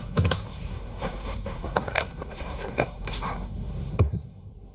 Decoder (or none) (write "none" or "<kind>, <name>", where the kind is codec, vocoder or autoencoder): codec, SNAC